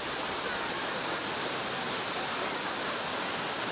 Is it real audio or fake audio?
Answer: real